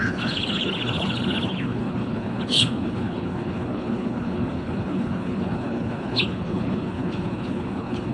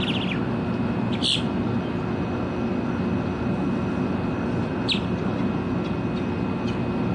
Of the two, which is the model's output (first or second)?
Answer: first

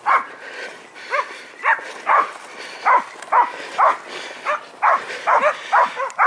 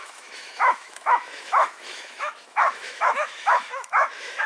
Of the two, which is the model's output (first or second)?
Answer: second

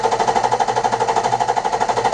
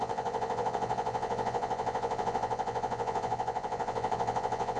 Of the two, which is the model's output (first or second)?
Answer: second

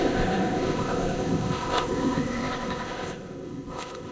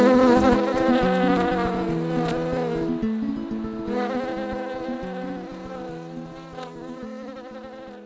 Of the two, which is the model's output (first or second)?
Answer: first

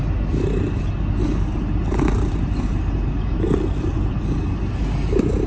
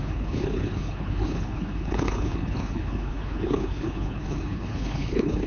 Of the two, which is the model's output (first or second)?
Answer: second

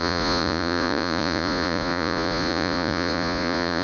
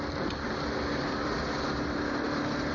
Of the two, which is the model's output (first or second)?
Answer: first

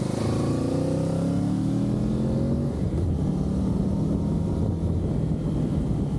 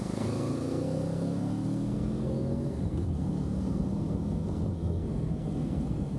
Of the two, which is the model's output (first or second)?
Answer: second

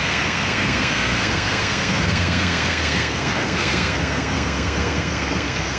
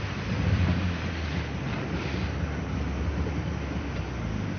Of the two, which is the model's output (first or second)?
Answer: first